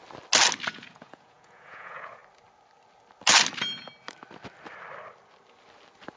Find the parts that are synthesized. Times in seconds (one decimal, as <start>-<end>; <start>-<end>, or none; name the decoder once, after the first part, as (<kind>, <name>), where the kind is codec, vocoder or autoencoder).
0.7-2.2 (vocoder, Vocos)